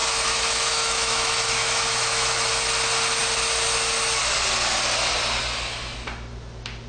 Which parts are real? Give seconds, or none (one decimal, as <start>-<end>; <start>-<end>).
2.5-6.9